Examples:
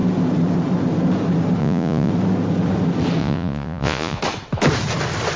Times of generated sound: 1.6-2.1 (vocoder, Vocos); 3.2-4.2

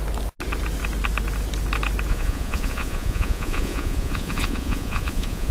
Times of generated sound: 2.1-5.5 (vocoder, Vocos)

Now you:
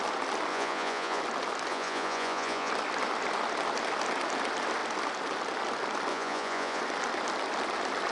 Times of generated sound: 0.5-1.2 (vocoder, Vocos); 1.7-2.7; 6.1-6.8

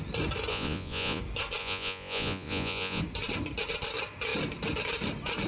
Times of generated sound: 0.5-1.2 (vocoder, Vocos); 1.6-3.0

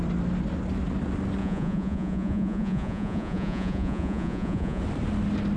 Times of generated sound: 1.4-4.8 (vocoder, Vocos)

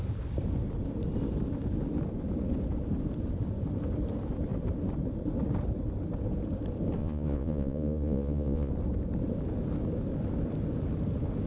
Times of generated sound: 7.0-8.7 (vocoder, Vocos)

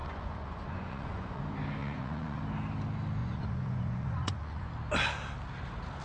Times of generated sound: 0.0-1.4 (vocoder, Vocos); 1.8-2.4; 3.2-4.7